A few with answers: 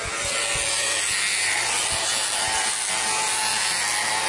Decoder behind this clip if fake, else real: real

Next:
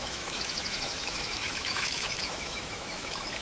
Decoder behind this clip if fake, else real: fake, autoencoder, DAC-VAE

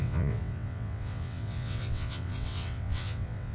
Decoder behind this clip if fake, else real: fake, vocoder, WaveNeXt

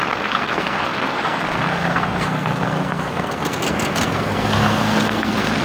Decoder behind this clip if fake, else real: fake, codec, SNAC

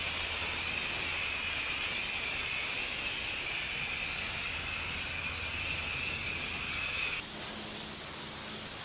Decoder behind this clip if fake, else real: real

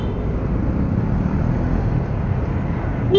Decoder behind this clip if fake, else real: real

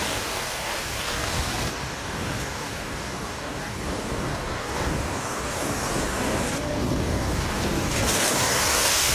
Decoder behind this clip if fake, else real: fake, codec, DAC